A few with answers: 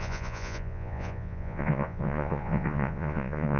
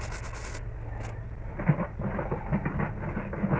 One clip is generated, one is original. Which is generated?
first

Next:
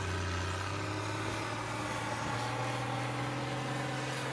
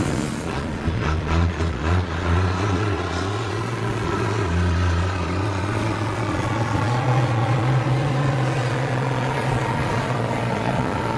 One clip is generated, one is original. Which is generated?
second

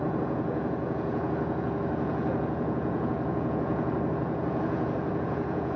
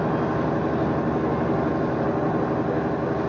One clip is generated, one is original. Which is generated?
first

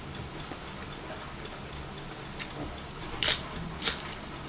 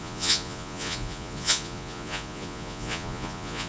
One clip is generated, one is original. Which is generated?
second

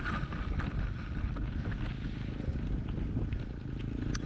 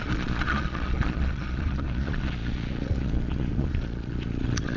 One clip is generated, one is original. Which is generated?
second